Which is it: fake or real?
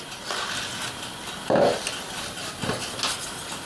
real